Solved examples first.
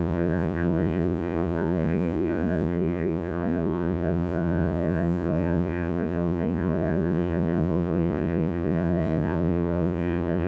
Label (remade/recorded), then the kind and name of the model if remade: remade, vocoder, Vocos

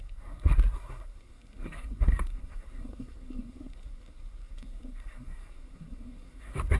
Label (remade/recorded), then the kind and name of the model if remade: remade, codec, SNAC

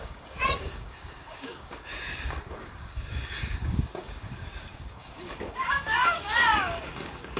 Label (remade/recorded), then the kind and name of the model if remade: remade, codec, DAC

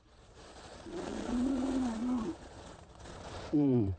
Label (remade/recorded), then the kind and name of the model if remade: remade, vocoder, Vocos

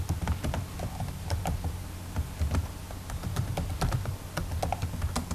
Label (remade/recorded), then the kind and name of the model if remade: recorded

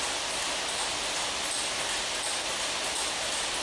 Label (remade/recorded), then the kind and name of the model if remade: recorded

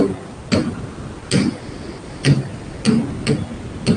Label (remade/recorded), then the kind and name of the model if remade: recorded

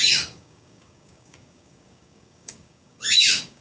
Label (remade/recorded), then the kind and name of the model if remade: remade, codec, DAC